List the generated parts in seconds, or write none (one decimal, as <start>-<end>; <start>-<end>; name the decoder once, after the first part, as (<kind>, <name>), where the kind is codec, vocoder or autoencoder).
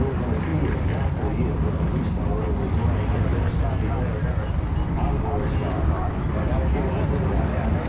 none